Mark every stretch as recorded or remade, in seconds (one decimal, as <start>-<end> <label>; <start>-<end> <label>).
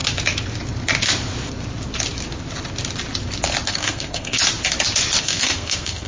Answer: 0.0-3.7 recorded; 3.7-4.4 remade; 4.4-5.2 recorded; 5.2-6.1 remade